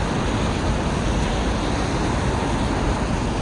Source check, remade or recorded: recorded